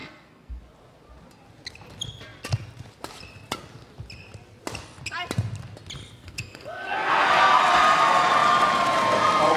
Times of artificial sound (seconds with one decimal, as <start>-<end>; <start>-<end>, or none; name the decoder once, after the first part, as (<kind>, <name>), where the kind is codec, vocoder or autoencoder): 0.0-0.6 (codec, SNAC); 6.2-7.6